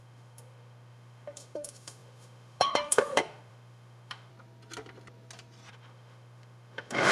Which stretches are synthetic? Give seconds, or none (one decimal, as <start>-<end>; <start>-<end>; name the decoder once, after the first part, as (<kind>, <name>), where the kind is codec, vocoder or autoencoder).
0.0-4.3 (autoencoder, DAC-VAE); 5.7-7.1